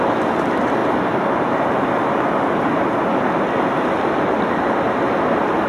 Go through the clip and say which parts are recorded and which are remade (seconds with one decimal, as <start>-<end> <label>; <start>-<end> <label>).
0.0-5.7 recorded